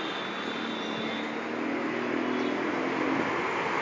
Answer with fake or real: real